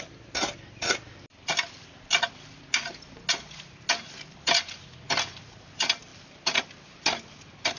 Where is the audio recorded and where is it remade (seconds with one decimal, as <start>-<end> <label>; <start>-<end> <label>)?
0.0-7.8 recorded